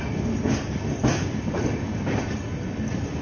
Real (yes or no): yes